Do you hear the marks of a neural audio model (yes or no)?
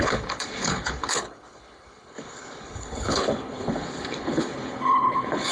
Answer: yes